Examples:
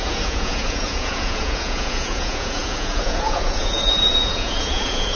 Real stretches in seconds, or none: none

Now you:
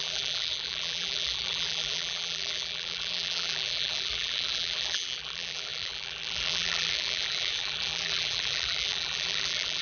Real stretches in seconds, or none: none

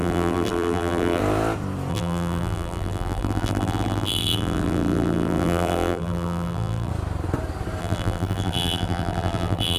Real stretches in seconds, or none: 1.2-1.9; 6.9-7.8

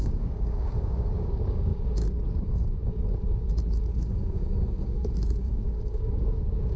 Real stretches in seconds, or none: none

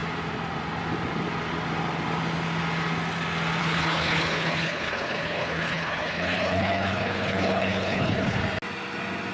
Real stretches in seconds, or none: 0.0-3.6; 8.4-9.3